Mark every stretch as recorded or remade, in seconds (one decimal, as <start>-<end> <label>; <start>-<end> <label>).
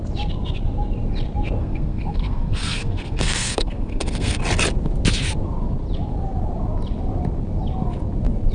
0.0-1.6 recorded; 1.6-4.4 remade; 4.4-8.5 recorded